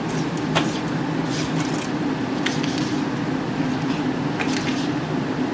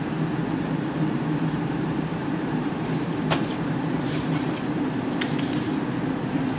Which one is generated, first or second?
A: second